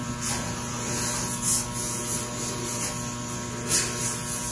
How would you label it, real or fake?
real